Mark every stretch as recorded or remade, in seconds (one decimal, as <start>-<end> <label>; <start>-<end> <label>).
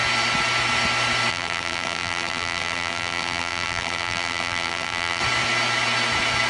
0.0-1.3 recorded; 1.3-5.2 remade; 5.2-6.5 recorded